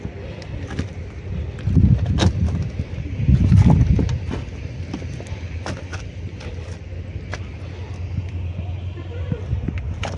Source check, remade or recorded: recorded